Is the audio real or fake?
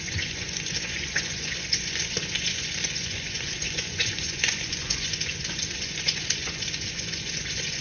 fake